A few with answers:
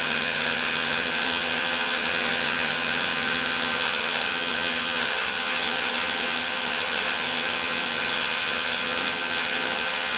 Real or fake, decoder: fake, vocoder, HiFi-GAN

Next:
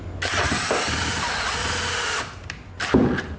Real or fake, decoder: real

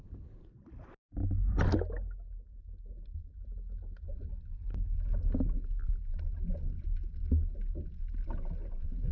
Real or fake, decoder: real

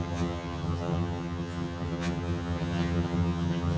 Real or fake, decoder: fake, vocoder, HiFi-GAN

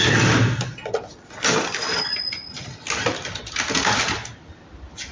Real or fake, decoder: real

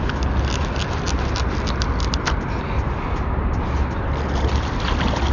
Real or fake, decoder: real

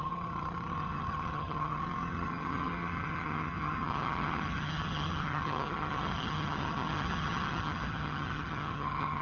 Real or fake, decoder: fake, vocoder, HiFi-GAN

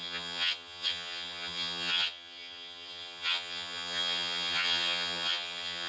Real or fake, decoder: fake, vocoder, HiFi-GAN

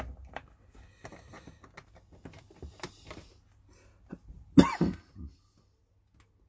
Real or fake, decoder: real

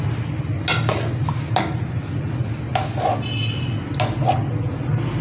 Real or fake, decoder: real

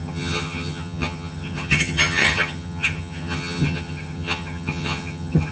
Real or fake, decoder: fake, vocoder, HiFi-GAN